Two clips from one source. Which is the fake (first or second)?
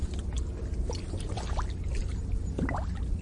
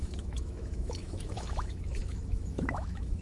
second